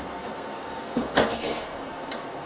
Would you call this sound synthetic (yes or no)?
yes